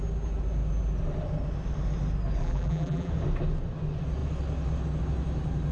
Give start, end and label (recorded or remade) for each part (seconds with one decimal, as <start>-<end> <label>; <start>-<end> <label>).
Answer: 0.0-2.4 recorded; 2.4-3.1 remade; 3.1-5.7 recorded

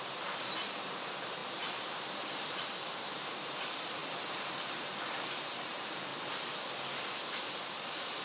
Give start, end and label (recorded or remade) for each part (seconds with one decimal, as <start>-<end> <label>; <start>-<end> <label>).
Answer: 0.0-6.1 remade; 6.1-7.4 recorded; 7.4-8.2 remade

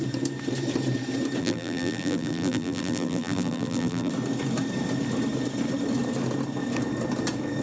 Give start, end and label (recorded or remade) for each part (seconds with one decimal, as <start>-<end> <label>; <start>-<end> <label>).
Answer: 0.0-1.4 recorded; 1.4-4.1 remade; 4.1-7.6 recorded

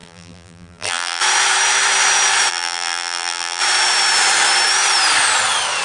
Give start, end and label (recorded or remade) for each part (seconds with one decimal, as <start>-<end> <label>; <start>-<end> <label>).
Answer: 0.0-1.2 remade; 1.2-2.5 recorded; 2.5-3.6 remade; 3.6-5.8 recorded

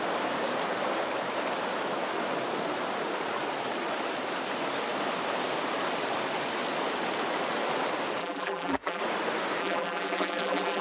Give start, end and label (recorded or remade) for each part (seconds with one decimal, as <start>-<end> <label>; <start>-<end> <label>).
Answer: 0.0-8.2 recorded; 8.2-9.0 remade; 9.0-9.6 recorded; 9.6-10.8 remade

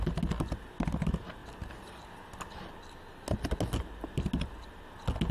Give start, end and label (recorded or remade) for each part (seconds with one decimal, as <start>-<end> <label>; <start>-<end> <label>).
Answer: 0.0-5.3 recorded

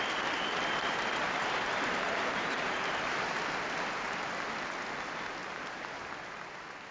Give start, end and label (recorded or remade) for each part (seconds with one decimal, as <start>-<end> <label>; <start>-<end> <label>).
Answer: 0.0-1.2 recorded; 1.2-3.2 remade; 3.2-5.4 recorded; 5.4-6.0 remade; 6.0-6.9 recorded